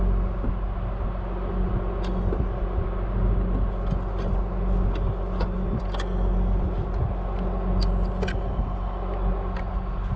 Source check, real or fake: real